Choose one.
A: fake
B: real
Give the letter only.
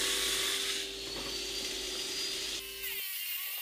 B